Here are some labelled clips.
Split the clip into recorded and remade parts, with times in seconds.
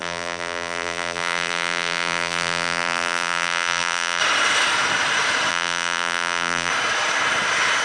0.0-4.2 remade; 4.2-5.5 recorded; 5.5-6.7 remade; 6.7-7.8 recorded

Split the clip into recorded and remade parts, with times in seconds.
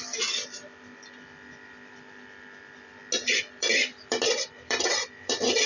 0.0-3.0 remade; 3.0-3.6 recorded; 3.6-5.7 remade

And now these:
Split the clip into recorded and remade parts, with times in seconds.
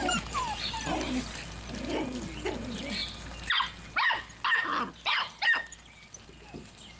0.0-7.0 recorded